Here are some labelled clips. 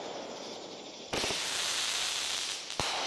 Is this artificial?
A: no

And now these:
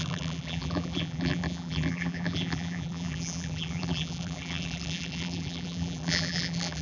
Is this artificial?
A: yes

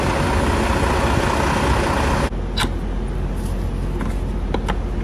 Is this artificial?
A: no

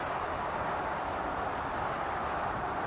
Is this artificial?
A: no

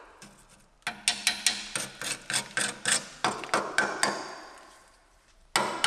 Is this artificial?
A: no